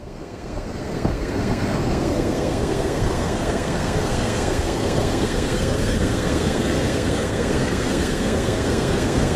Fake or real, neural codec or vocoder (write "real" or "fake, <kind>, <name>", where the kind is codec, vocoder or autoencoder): fake, codec, SNAC